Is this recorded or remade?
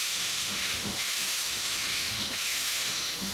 remade